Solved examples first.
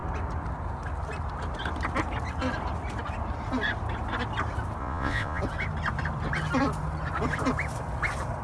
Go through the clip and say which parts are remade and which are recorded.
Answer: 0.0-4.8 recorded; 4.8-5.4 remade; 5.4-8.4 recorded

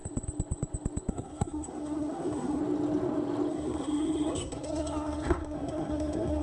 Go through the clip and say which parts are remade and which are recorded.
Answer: 0.0-1.1 recorded; 1.1-2.6 remade; 2.6-3.5 recorded; 3.5-6.4 remade